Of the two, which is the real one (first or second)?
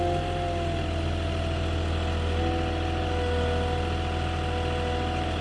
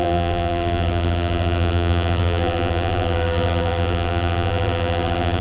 first